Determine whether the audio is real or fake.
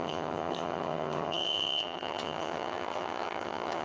fake